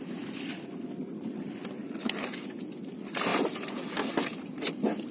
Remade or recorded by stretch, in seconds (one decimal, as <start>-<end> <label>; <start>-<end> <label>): 0.0-5.1 recorded